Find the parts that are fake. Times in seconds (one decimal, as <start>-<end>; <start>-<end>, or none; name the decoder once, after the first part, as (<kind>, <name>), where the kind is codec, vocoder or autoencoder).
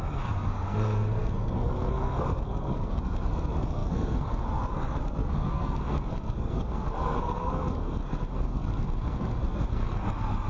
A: 0.0-10.5 (codec, SNAC)